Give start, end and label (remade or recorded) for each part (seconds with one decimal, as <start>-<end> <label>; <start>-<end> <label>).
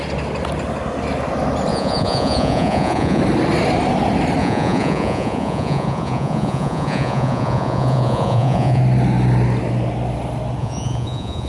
0.0-1.7 recorded; 1.7-3.2 remade; 3.2-4.4 recorded; 4.4-8.8 remade; 8.8-10.6 recorded; 10.6-11.5 remade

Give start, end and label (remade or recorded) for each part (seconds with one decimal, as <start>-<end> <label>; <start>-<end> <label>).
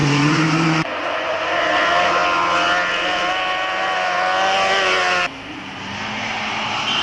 0.0-1.6 remade; 1.6-7.0 recorded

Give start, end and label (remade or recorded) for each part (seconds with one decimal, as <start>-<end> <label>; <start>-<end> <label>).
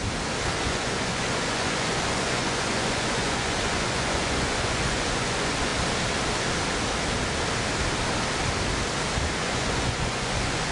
0.0-0.6 recorded; 0.6-5.7 remade; 5.7-9.4 recorded; 9.4-10.7 remade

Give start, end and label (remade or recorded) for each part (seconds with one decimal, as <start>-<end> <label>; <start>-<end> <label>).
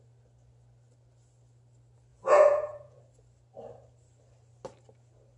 0.0-2.1 recorded; 2.1-3.0 remade; 3.0-5.4 recorded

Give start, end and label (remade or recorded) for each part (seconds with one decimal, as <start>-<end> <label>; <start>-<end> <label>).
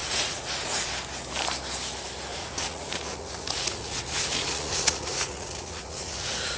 0.0-0.9 remade; 0.9-2.3 recorded; 2.3-6.6 remade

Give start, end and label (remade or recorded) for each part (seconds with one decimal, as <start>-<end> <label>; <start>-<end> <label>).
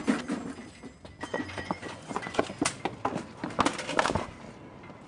0.0-1.3 recorded; 1.3-2.5 remade; 2.5-5.1 recorded